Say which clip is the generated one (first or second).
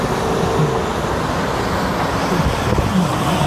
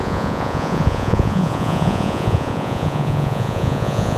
second